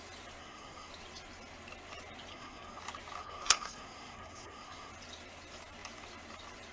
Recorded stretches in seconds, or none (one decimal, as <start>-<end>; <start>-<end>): 0.0-0.4; 0.9-2.3; 2.8-3.2; 4.9-6.7